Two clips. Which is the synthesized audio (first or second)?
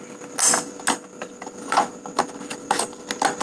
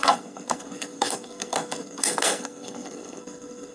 second